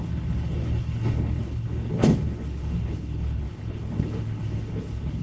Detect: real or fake fake